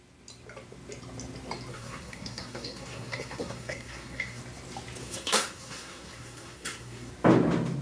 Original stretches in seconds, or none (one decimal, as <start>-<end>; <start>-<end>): 0.0-1.7; 4.4-5.0; 7.1-7.8